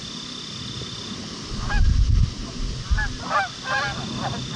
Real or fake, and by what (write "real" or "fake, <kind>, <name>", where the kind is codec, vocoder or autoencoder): real